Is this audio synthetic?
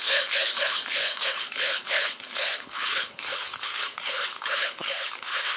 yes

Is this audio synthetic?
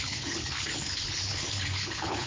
yes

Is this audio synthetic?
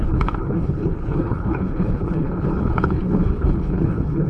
yes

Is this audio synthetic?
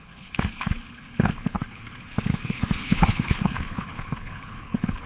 yes